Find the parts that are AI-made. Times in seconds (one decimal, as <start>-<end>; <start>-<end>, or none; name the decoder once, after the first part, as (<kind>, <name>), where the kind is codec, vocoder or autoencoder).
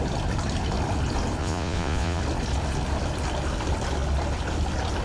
1.4-2.2 (vocoder, Vocos)